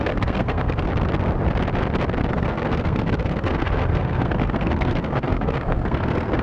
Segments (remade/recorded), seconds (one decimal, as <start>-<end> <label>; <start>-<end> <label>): 0.0-0.9 remade; 0.9-2.3 recorded; 2.3-6.4 remade